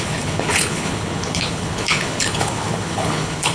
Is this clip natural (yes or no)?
no